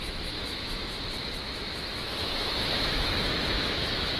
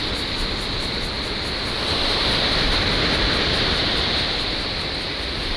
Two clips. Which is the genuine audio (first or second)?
second